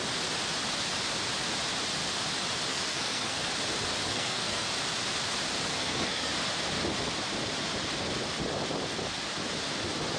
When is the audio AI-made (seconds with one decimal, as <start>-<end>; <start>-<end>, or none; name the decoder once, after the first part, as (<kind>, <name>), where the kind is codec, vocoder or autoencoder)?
2.7-3.5 (codec, SNAC); 4.1-4.7; 5.7-6.3